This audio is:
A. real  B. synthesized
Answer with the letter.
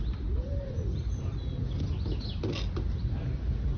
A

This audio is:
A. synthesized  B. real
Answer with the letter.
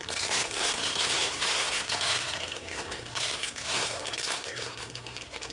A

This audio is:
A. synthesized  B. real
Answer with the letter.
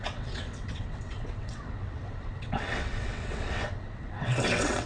A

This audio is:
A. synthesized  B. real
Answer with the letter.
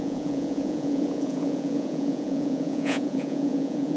A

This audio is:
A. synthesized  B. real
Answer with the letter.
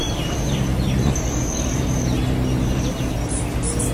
B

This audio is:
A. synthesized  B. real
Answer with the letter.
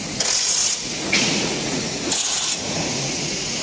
A